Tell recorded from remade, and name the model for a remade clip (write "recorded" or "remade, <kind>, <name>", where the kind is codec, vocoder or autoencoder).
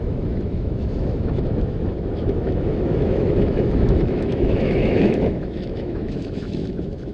remade, autoencoder, DAC-VAE